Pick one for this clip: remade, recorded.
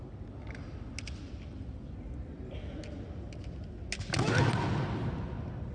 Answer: recorded